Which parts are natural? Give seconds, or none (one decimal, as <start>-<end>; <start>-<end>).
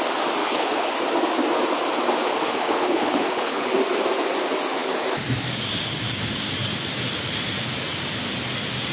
0.0-0.4; 0.9-2.3; 3.7-8.9